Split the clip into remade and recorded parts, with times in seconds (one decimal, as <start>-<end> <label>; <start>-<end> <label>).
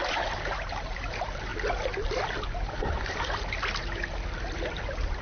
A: 0.0-1.5 remade; 1.5-2.9 recorded; 2.9-5.2 remade